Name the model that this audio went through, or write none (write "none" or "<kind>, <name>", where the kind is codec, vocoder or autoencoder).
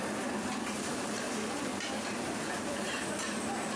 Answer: vocoder, BigVGAN v2